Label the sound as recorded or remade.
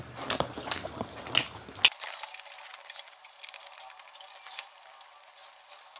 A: recorded